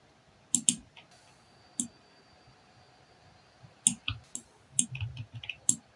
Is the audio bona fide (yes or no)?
yes